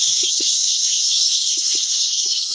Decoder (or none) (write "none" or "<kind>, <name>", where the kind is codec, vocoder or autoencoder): codec, SNAC